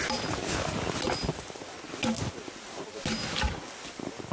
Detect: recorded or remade recorded